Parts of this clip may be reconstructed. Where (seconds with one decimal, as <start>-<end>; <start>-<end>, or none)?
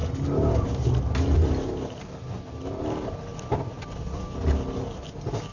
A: none